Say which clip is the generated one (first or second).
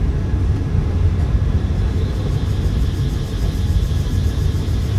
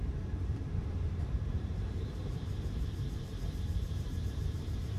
second